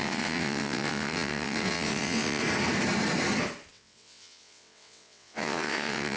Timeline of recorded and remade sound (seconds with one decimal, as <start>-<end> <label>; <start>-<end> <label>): 0.0-2.4 remade; 2.4-3.7 recorded; 3.7-6.2 remade